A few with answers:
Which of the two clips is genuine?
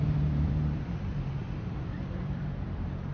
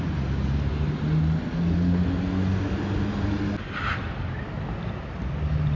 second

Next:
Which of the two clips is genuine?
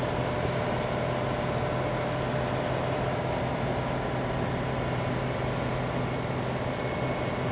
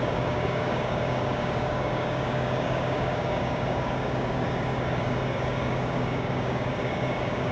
first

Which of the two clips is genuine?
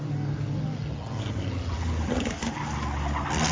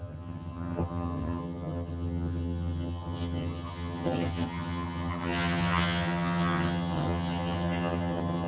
first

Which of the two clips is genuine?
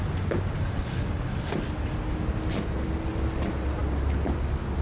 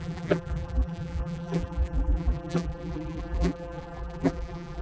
first